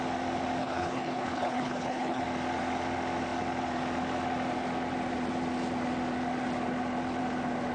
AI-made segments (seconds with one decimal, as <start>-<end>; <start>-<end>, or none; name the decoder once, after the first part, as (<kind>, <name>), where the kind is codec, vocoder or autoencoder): 0.6-2.2 (codec, HILCodec)

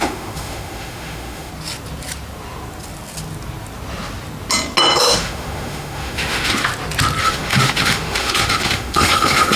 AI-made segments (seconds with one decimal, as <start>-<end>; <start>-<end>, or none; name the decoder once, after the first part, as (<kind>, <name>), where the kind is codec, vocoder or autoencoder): 0.0-1.5 (autoencoder, DAC-VAE); 5.0-6.7; 7.2-9.6

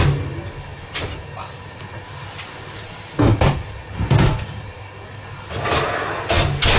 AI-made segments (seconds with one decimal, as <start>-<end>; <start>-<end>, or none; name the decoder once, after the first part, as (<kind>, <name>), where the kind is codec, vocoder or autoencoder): none

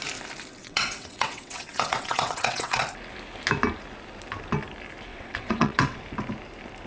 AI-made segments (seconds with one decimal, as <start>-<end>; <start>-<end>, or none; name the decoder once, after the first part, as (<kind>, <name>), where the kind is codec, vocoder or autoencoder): 0.6-2.8 (vocoder, WaveNeXt); 5.1-6.0

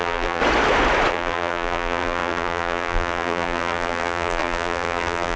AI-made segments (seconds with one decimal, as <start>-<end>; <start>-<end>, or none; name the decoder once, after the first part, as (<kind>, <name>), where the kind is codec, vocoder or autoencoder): 0.0-0.4 (vocoder, BigVGAN v2); 1.1-5.4

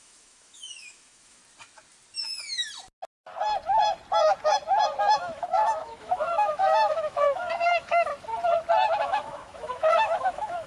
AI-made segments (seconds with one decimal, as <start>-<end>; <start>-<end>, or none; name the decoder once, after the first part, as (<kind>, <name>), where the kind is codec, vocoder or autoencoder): 0.0-1.4 (autoencoder, DAC-VAE); 5.0-8.1; 9.0-10.7